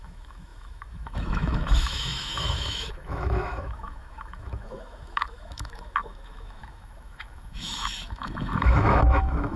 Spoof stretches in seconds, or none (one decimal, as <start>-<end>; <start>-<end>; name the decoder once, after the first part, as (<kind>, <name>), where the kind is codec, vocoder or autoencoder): 0.0-9.6 (autoencoder, DAC-VAE)